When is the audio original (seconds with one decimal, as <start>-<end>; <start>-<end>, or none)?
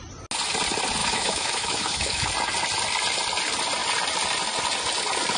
0.0-1.0; 2.3-5.4